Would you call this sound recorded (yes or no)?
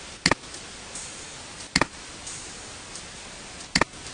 yes